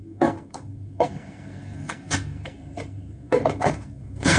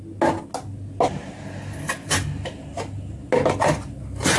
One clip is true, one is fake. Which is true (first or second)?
second